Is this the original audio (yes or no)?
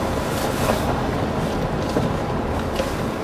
yes